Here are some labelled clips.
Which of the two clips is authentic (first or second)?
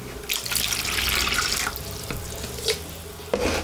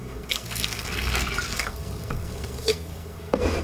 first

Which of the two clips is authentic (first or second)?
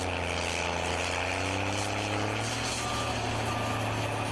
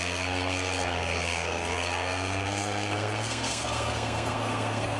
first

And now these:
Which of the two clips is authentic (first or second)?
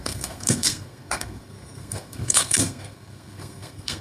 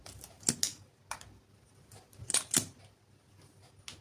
second